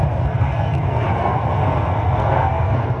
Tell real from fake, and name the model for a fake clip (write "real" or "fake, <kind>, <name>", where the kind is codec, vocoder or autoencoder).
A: fake, codec, SNAC